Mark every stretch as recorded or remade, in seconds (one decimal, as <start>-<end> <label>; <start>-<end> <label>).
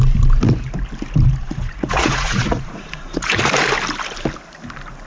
0.0-1.4 recorded; 1.4-3.4 remade; 3.4-5.1 recorded